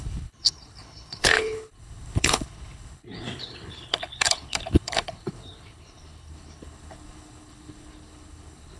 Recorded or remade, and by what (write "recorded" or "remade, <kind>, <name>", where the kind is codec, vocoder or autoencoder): remade, codec, HILCodec